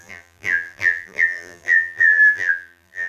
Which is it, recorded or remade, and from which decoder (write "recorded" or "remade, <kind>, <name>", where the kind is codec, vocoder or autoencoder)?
remade, vocoder, BigVGAN v2